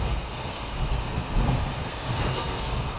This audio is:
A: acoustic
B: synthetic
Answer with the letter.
B